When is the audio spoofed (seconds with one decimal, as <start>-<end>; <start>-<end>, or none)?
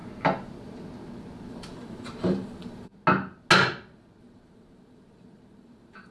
1.5-2.9; 4.2-6.1